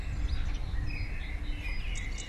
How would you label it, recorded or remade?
recorded